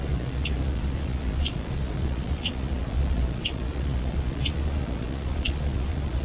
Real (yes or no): no